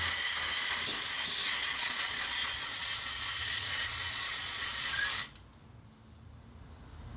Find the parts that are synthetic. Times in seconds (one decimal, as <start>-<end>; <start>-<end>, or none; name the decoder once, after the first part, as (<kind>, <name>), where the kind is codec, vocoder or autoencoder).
1.6-5.0 (vocoder, Vocos)